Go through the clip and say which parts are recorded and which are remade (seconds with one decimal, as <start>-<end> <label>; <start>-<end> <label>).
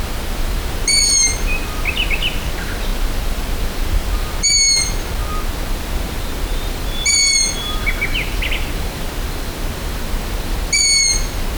0.0-11.6 recorded